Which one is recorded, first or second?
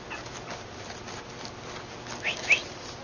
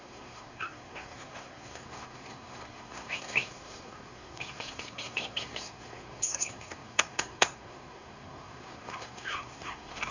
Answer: first